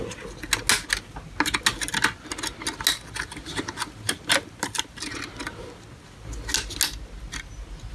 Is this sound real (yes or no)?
yes